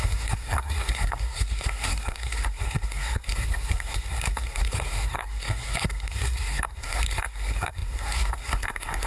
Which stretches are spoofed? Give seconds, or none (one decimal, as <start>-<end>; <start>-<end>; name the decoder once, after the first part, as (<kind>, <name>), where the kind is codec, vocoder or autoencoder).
0.0-9.1 (codec, SNAC)